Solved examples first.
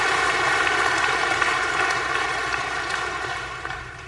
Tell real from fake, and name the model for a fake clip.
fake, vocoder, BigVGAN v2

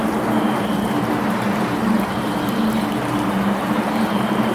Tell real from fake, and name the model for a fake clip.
fake, vocoder, BigVGAN v2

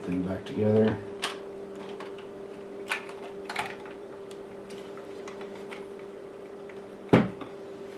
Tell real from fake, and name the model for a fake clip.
fake, vocoder, BigVGAN v2